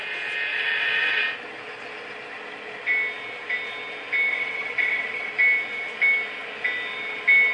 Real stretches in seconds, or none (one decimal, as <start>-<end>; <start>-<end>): 0.0-0.5; 1.2-4.3; 5.3-7.5